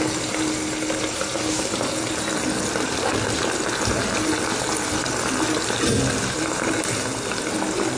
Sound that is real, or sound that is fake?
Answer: real